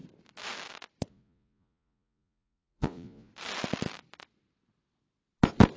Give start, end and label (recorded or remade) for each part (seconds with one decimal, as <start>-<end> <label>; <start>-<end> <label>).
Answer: 0.0-1.1 recorded; 1.1-3.3 remade; 3.3-5.8 recorded